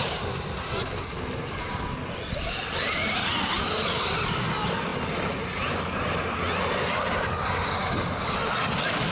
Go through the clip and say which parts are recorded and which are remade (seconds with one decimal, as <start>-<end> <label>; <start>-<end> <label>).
0.0-9.1 recorded